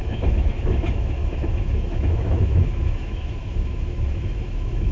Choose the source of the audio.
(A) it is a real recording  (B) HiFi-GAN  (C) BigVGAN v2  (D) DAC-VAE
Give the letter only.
D